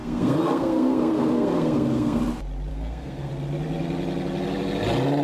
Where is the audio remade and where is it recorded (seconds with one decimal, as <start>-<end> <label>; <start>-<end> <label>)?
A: 0.0-2.2 remade; 2.2-2.7 recorded; 2.7-3.3 remade; 3.3-5.2 recorded